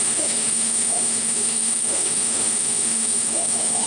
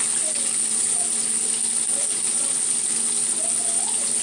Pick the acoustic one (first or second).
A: second